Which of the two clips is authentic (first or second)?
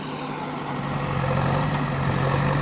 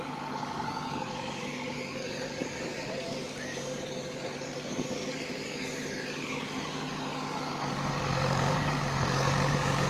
first